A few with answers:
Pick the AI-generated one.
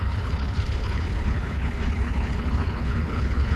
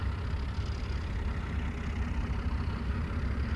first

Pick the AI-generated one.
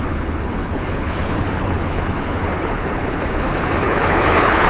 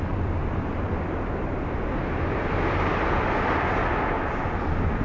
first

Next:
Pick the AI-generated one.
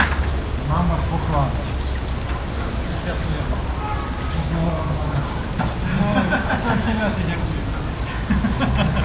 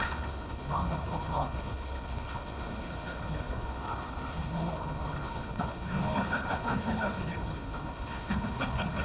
second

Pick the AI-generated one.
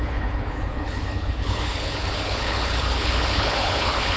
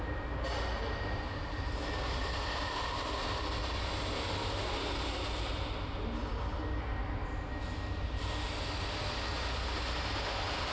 first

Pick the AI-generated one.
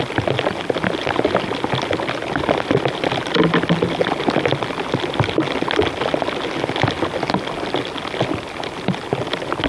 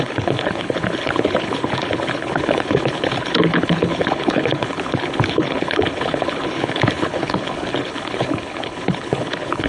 second